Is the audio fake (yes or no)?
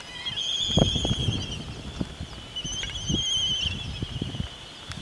no